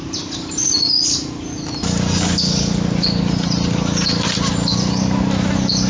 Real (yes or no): yes